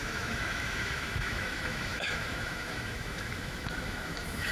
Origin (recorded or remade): remade